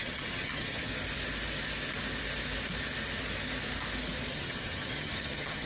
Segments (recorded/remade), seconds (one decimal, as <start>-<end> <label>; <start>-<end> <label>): 0.0-0.9 remade; 0.9-4.3 recorded; 4.3-5.7 remade